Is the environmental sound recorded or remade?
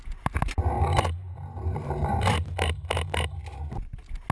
recorded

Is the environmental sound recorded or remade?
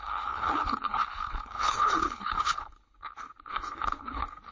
remade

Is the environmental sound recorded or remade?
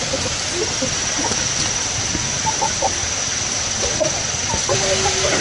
recorded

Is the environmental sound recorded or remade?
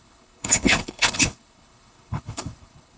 remade